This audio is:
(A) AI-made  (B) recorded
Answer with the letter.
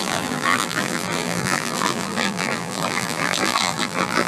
A